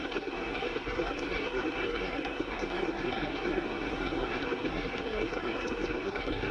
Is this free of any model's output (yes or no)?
no